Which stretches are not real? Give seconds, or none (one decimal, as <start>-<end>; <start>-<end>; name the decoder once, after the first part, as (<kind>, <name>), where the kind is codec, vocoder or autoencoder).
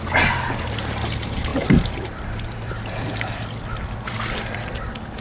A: 1.5-4.6 (vocoder, BigVGAN v2)